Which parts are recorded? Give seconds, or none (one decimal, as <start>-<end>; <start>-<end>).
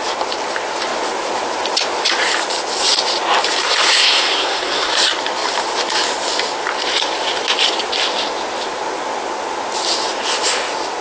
0.0-3.6; 4.9-11.0